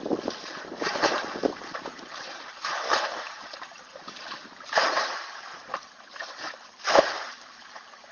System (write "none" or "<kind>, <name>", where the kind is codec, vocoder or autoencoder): vocoder, BigVGAN v2